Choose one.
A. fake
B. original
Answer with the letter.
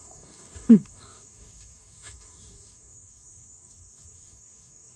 A